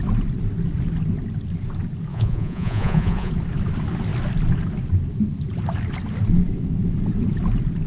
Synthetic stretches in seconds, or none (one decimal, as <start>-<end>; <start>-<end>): 2.1-3.3